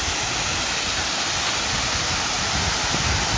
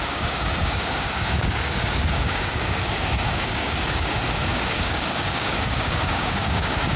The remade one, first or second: second